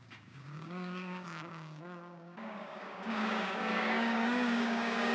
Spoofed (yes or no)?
yes